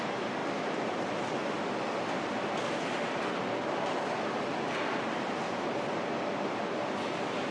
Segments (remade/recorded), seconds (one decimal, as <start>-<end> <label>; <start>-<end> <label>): 0.0-7.5 recorded